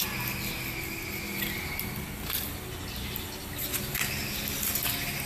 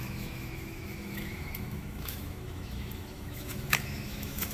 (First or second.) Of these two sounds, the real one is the first